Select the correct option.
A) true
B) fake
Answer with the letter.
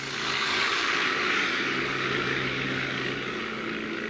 B